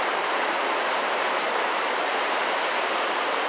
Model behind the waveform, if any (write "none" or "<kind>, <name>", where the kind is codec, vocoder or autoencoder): vocoder, BigVGAN v2